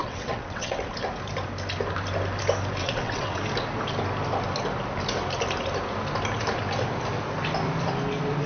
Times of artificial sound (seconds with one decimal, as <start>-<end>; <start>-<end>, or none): 0.0-0.9; 2.8-3.4